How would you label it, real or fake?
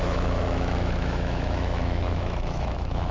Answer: fake